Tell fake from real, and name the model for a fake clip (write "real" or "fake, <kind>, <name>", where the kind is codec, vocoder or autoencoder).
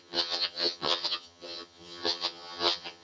fake, vocoder, HiFi-GAN